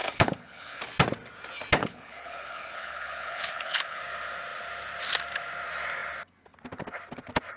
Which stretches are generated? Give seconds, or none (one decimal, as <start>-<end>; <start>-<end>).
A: 0.0-0.8; 1.8-4.0

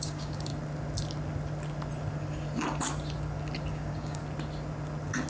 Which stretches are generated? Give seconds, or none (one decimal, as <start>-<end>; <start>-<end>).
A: 0.0-0.5; 3.7-4.2

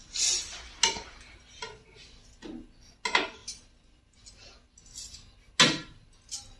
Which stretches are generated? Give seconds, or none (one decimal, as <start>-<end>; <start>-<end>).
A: none

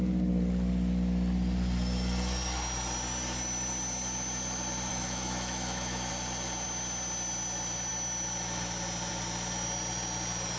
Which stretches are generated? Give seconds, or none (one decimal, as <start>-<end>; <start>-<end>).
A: 4.9-6.1

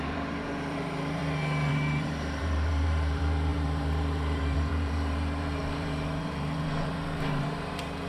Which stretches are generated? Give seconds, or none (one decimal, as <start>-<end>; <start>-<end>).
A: 0.0-1.2; 1.7-8.1

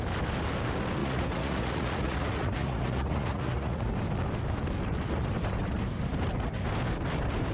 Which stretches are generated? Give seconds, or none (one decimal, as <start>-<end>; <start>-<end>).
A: 1.0-3.9

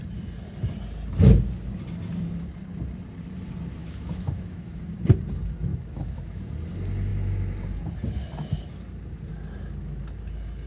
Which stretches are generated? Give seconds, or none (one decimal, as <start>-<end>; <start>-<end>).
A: 3.8-4.8; 5.7-6.5